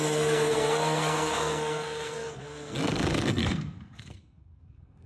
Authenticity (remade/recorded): remade